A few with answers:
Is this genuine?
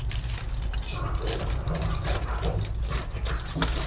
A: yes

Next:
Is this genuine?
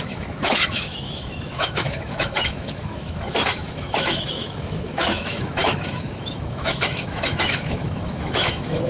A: no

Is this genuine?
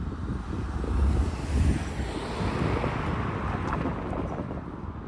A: yes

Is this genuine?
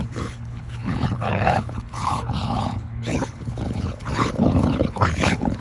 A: no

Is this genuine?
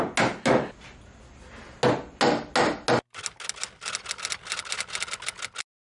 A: yes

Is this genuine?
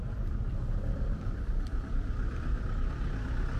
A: yes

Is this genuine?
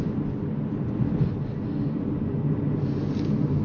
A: yes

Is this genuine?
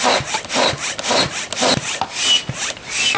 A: yes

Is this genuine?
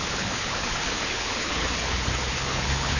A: no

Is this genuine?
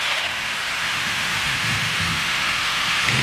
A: no